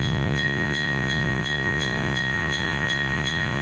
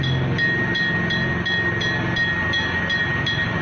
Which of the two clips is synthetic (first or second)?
first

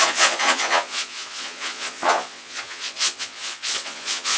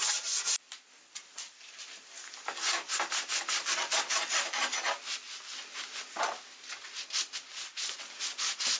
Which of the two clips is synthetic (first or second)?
first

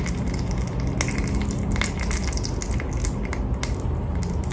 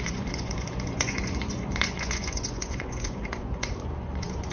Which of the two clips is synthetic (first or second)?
second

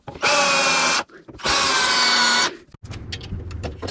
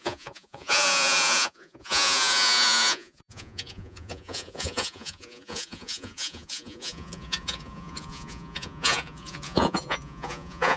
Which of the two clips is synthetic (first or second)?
second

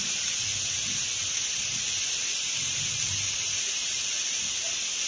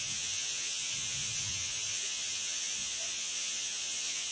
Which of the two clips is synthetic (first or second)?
second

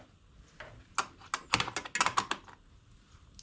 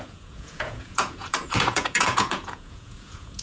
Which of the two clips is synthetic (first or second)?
second